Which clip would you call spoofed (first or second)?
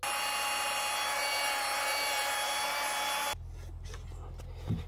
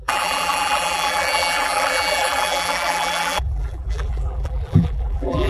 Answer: second